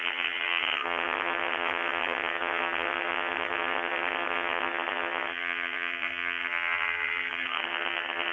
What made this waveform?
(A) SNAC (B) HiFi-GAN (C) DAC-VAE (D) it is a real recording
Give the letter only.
B